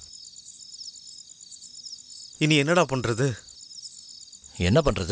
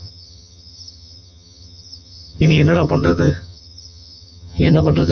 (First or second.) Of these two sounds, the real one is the first